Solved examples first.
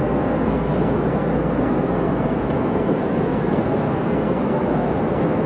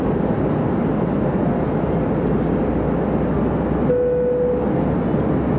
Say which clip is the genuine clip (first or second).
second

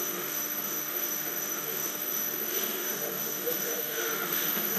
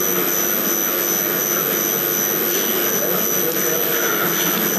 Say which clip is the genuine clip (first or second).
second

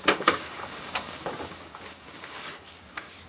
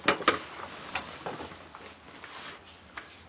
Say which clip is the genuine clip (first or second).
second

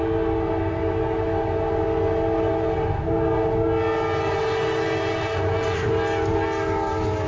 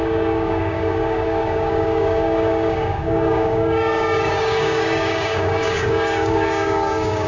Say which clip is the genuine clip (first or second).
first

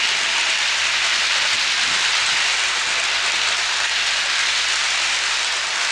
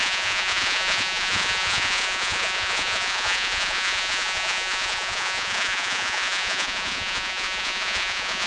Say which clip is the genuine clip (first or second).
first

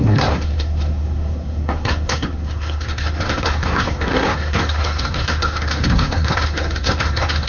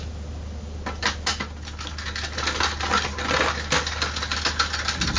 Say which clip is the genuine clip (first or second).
second